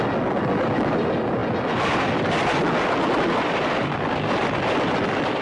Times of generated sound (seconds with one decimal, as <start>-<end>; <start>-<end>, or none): none

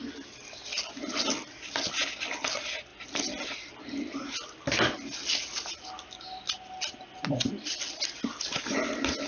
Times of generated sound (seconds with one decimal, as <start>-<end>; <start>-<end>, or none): 2.9-3.8